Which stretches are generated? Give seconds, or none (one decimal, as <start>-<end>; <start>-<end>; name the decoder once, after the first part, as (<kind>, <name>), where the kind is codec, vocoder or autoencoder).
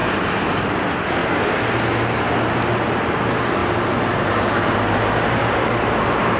0.0-0.6 (vocoder, BigVGAN v2); 3.6-6.4